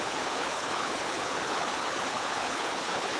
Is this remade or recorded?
remade